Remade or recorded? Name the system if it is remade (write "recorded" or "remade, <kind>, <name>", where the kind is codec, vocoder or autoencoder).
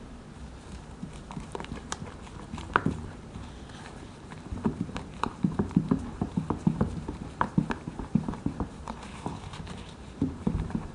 remade, vocoder, BigVGAN v2